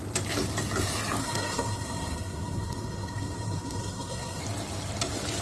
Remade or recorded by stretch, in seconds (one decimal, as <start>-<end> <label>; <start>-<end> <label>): 0.0-1.2 recorded; 1.2-4.4 remade; 4.4-5.4 recorded